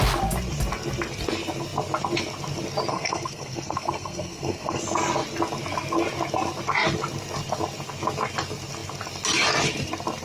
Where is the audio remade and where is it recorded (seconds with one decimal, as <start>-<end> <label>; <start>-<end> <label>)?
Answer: 0.0-2.9 recorded; 2.9-4.8 remade; 4.8-10.2 recorded